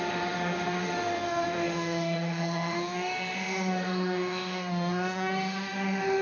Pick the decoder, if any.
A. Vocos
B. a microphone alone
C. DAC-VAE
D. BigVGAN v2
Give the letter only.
C